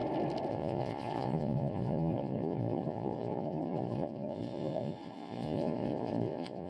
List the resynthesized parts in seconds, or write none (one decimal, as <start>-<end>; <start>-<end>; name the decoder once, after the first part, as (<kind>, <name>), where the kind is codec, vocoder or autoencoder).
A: 0.5-6.7 (vocoder, Vocos)